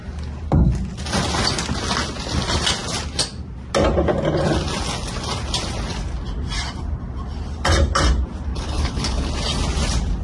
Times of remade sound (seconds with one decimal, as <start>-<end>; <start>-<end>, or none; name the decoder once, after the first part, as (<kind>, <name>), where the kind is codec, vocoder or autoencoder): 8.5-9.3 (codec, HILCodec)